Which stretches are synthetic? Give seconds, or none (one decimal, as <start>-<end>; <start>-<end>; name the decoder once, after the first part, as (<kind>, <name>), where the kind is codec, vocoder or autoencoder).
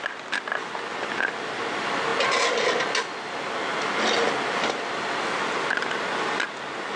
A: none